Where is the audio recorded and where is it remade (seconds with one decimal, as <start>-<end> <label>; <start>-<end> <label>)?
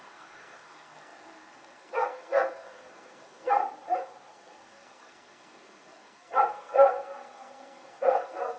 0.0-3.6 remade; 3.6-4.3 recorded; 4.3-8.6 remade